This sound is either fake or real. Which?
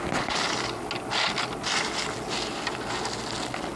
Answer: real